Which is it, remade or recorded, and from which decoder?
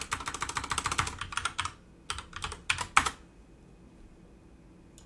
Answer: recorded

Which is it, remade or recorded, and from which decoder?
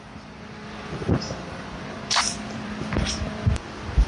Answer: remade, vocoder, BigVGAN v2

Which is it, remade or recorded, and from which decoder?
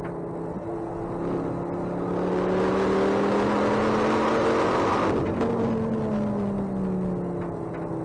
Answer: recorded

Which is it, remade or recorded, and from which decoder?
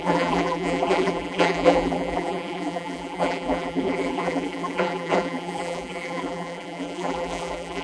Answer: remade, vocoder, BigVGAN v2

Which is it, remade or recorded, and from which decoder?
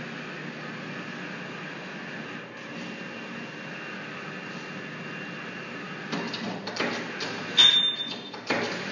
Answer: recorded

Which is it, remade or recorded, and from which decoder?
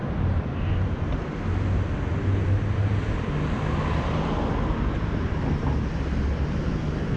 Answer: recorded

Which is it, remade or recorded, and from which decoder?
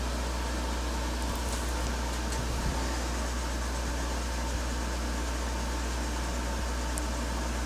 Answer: recorded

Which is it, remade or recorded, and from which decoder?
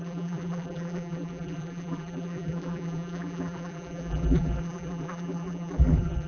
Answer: remade, vocoder, BigVGAN v2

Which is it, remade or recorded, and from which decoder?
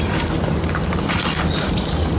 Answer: recorded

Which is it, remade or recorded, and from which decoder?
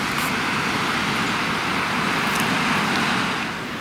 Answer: recorded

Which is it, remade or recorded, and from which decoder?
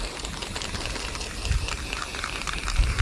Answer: remade, vocoder, BigVGAN v2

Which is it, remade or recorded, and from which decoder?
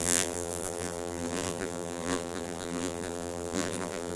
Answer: remade, vocoder, BigVGAN v2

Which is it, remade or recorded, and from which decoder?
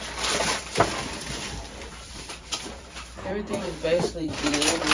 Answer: remade, vocoder, BigVGAN v2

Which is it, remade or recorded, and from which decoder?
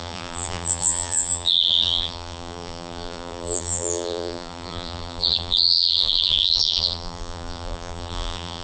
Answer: remade, vocoder, BigVGAN v2